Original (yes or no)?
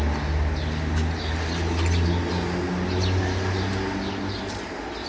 yes